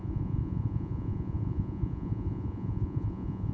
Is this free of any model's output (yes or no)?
no